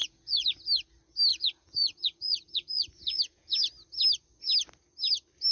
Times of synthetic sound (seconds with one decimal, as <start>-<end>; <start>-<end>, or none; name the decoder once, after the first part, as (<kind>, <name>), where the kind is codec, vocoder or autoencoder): 0.0-0.6 (vocoder, Vocos); 1.3-3.5